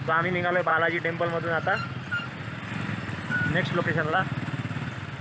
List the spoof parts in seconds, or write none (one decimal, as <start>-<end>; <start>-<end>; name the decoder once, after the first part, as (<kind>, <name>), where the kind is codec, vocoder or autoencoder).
0.0-0.7 (codec, DAC); 3.8-4.2